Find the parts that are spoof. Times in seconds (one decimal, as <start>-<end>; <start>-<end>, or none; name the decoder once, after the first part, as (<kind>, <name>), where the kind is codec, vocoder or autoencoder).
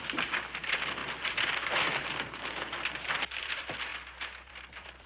0.0-1.0 (vocoder, BigVGAN v2); 3.1-3.9; 4.5-5.1